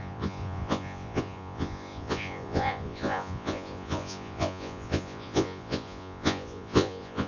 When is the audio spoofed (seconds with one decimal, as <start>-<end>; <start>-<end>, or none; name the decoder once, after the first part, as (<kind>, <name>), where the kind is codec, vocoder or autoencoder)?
0.0-7.3 (vocoder, Vocos)